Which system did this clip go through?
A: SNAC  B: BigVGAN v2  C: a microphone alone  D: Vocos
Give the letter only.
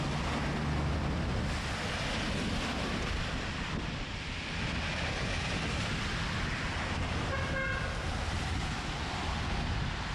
C